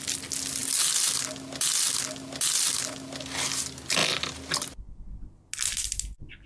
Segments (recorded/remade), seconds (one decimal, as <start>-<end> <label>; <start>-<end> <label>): 0.0-6.5 recorded